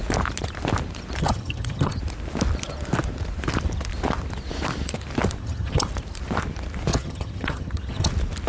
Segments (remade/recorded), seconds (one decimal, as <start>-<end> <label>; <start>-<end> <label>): 0.0-1.2 recorded; 1.2-2.0 remade; 2.0-5.4 recorded; 5.4-5.9 remade; 5.9-6.9 recorded; 6.9-8.1 remade; 8.1-8.5 recorded